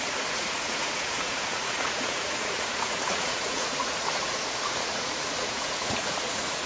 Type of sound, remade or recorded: remade